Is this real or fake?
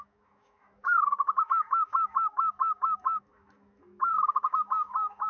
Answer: fake